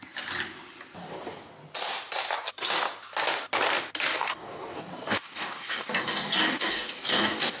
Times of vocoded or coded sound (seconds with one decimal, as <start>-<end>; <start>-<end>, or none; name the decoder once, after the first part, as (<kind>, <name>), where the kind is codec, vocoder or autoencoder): 1.0-1.5 (codec, DAC); 4.1-7.6